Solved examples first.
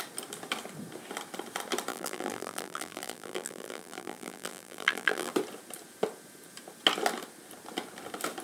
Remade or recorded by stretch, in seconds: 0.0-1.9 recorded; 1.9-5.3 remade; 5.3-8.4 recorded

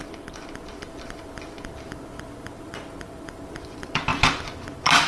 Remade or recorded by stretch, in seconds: 0.0-4.1 remade; 4.1-5.1 recorded

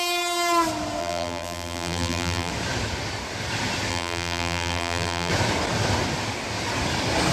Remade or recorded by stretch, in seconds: 0.0-1.0 recorded; 1.0-2.5 remade; 2.5-3.9 recorded; 3.9-5.3 remade; 5.3-7.3 recorded